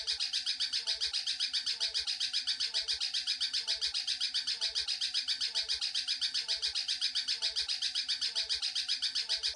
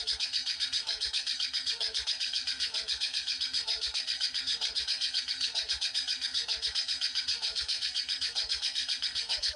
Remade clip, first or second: second